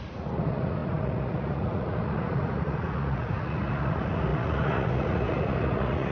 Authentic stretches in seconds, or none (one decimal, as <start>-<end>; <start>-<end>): none